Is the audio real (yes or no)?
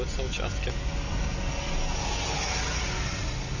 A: yes